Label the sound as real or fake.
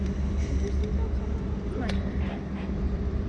real